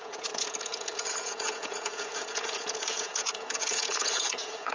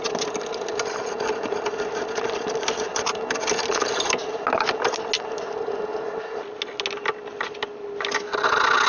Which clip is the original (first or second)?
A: second